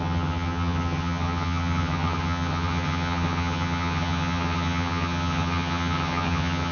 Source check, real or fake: fake